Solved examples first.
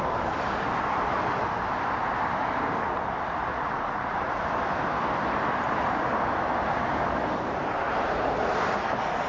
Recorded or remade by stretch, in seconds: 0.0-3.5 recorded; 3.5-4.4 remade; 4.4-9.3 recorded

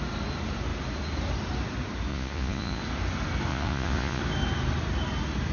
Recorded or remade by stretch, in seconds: 0.0-2.1 recorded; 2.1-2.8 remade; 2.8-3.5 recorded; 3.5-4.2 remade; 4.2-5.5 recorded

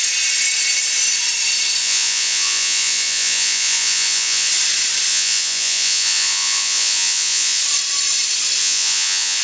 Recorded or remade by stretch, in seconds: 0.0-1.8 recorded; 1.8-4.5 remade; 4.5-5.1 recorded; 5.1-7.6 remade; 7.6-8.6 recorded; 8.6-9.4 remade

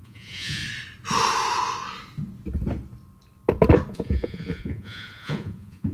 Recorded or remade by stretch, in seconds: 0.0-0.6 remade; 0.6-3.9 recorded; 3.9-5.9 remade